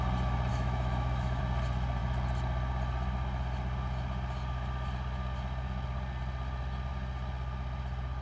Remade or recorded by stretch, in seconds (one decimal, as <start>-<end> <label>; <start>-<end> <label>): 0.0-0.5 recorded; 0.5-1.4 remade; 1.4-8.2 recorded